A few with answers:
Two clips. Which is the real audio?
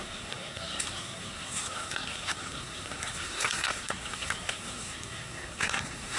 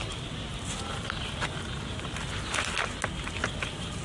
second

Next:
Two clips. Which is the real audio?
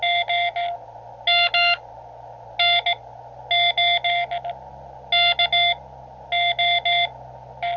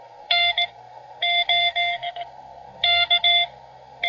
first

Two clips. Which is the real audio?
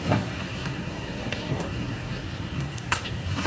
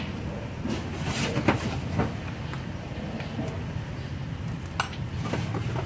second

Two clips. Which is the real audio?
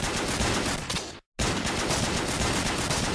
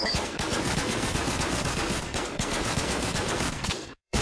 first